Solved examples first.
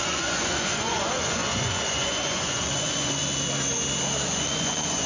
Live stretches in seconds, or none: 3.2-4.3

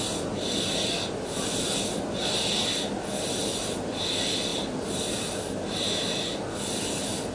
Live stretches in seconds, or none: 0.0-7.3

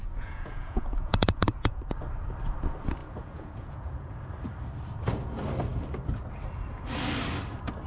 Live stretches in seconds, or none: 1.8-3.0; 4.1-7.9

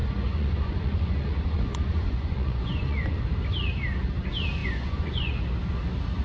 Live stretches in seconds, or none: 3.2-4.6; 5.3-6.2

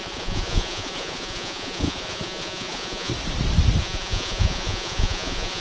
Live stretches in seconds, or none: 3.1-3.8